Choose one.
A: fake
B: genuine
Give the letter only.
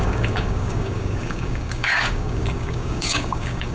A